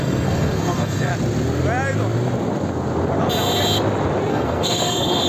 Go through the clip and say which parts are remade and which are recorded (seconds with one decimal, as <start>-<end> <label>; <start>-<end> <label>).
0.0-1.1 remade; 1.1-4.3 recorded; 4.3-5.3 remade